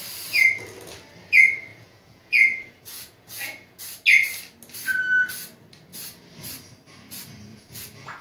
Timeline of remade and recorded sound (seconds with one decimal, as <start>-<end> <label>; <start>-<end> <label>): 0.0-1.7 recorded; 1.7-3.8 remade; 3.8-7.5 recorded; 7.5-8.2 remade